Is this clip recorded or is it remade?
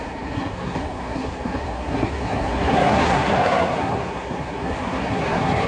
remade